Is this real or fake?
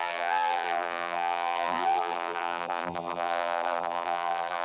fake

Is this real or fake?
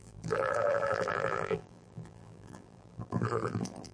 fake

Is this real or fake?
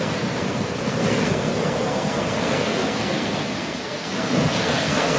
fake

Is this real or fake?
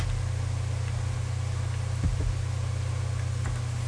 real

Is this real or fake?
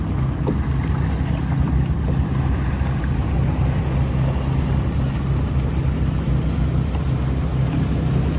real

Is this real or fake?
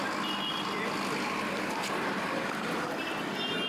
real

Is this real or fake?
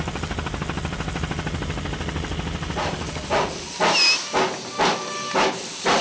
real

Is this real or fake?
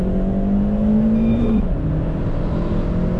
real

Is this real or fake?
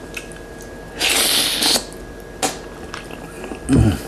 real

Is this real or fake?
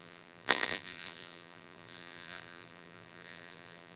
fake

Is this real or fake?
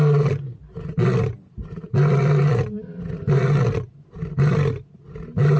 real